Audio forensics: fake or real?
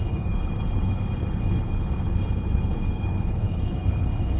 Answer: fake